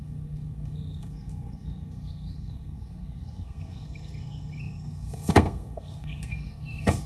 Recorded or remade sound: remade